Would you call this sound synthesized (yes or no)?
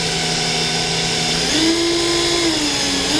no